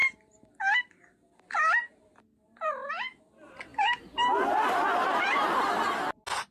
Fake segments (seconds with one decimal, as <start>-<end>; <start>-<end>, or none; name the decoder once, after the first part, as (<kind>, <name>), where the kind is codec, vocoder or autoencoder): 3.7-4.7 (vocoder, BigVGAN v2)